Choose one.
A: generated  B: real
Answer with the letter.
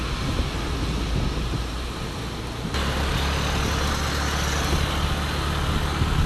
B